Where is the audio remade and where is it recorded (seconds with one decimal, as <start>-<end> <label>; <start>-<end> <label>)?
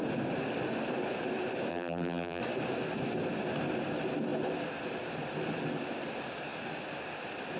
0.0-1.7 recorded; 1.7-2.4 remade; 2.4-7.6 recorded